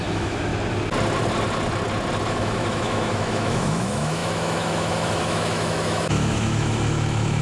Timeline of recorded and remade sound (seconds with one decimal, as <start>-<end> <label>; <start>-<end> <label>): 0.0-0.5 remade; 0.5-2.3 recorded; 2.3-7.4 remade